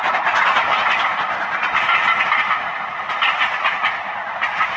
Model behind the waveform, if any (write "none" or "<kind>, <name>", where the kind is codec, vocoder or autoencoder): none